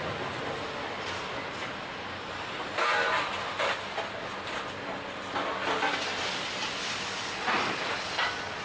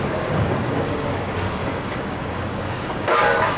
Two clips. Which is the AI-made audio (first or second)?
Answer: second